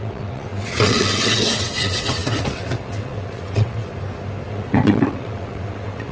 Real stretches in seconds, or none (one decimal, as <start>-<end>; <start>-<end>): 3.9-4.5

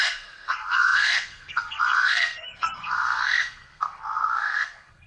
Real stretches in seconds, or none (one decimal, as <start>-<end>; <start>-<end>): none

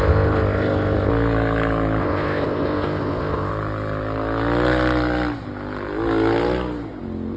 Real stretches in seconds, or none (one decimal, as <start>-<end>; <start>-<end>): 1.1-2.0; 3.5-7.4

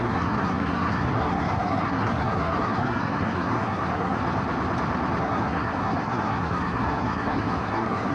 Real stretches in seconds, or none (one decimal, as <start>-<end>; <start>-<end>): 4.2-5.2

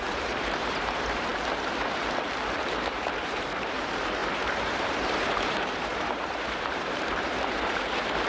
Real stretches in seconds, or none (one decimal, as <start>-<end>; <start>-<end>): 1.3-2.6

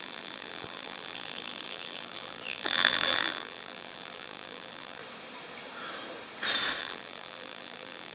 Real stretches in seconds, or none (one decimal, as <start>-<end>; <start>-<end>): 5.0-6.8